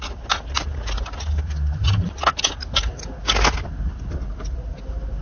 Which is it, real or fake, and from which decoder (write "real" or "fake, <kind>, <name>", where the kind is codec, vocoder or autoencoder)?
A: real